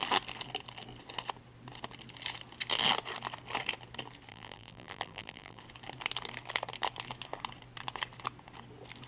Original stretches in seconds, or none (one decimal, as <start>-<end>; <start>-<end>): 0.0-4.3; 5.6-9.1